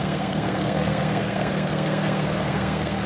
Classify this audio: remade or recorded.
remade